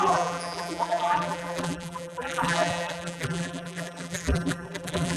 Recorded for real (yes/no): no